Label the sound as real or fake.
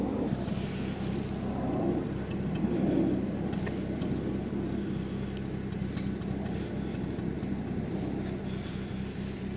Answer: real